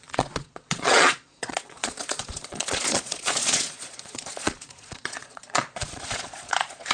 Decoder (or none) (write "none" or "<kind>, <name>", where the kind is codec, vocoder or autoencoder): vocoder, Vocos